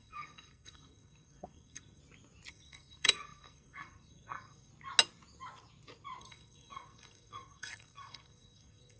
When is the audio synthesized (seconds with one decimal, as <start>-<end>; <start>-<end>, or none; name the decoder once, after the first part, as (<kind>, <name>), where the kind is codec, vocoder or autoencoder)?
0.0-2.0 (codec, SNAC); 2.5-4.7; 6.2-9.0